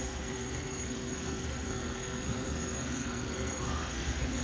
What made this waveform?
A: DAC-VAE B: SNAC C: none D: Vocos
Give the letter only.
B